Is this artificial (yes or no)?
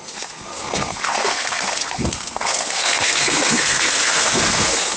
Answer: yes